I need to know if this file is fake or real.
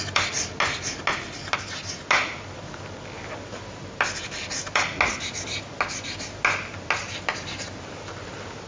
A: real